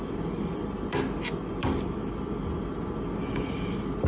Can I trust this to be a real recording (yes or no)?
yes